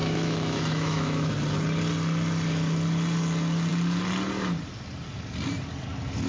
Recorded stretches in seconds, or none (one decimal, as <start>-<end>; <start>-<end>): 1.3-6.3